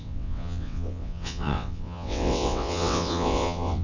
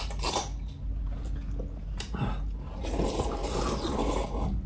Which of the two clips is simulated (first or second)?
first